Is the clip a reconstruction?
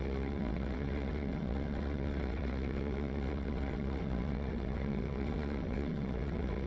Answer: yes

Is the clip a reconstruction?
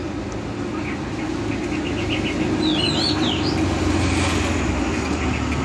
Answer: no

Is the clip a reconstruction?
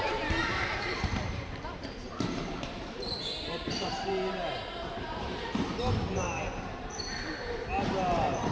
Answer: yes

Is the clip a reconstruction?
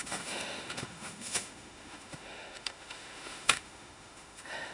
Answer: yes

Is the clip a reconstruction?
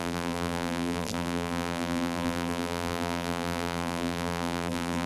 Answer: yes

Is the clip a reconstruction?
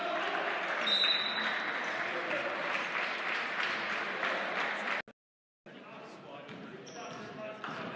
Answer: no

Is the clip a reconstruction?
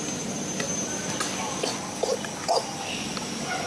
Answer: no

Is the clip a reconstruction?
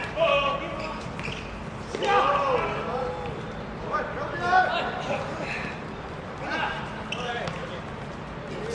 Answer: no